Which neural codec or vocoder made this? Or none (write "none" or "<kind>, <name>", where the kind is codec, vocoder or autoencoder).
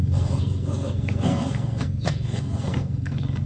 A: codec, SNAC